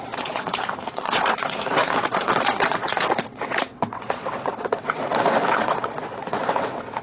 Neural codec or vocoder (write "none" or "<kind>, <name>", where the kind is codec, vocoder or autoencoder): vocoder, WaveNeXt